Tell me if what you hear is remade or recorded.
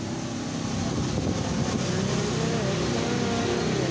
recorded